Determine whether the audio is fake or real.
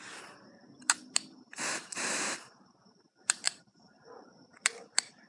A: fake